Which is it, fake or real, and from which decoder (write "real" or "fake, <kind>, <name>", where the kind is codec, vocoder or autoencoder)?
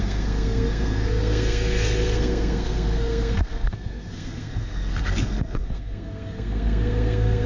fake, codec, SNAC